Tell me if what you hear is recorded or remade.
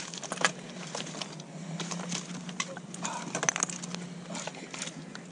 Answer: recorded